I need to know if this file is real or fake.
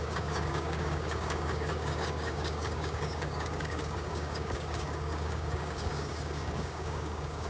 fake